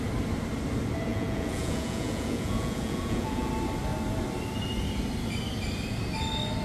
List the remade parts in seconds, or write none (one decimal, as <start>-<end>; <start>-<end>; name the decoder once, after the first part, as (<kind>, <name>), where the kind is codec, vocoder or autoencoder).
1.1-3.5 (vocoder, Vocos)